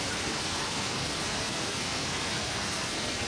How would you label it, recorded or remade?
remade